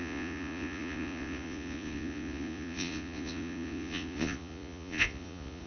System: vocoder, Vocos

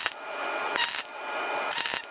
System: none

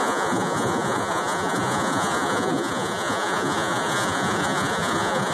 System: vocoder, Vocos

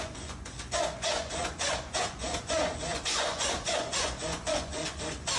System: vocoder, Vocos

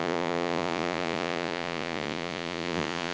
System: vocoder, Vocos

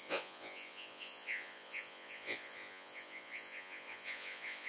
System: vocoder, Vocos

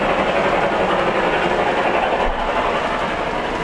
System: none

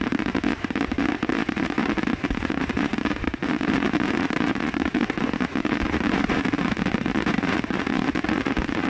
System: vocoder, Vocos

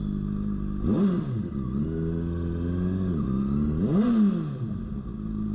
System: none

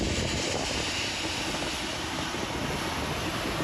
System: none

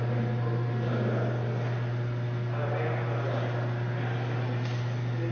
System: none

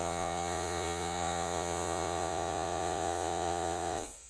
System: vocoder, Vocos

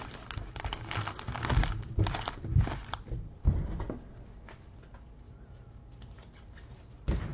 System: none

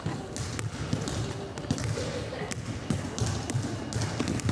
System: none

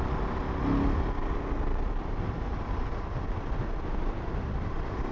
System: none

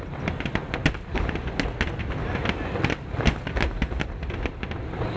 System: none